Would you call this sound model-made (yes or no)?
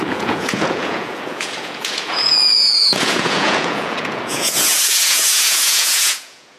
yes